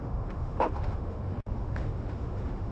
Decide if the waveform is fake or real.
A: fake